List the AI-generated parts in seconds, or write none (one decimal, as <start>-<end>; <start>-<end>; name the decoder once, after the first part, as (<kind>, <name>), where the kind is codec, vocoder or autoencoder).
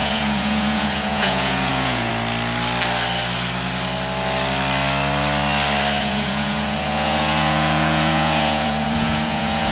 0.0-2.1 (vocoder, Vocos); 6.0-9.7